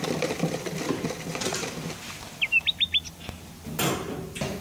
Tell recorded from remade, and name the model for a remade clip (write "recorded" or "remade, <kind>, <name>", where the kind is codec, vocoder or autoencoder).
recorded